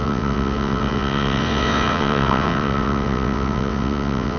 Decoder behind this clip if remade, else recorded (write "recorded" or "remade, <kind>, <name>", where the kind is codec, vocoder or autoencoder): remade, vocoder, WaveNeXt